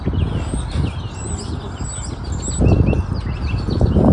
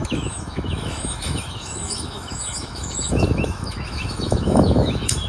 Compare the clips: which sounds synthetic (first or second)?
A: second